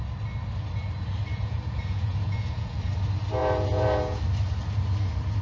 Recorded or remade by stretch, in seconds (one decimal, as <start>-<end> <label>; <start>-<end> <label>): 0.0-1.3 recorded; 1.3-2.8 remade; 2.8-3.4 recorded; 3.4-4.2 remade; 4.2-5.4 recorded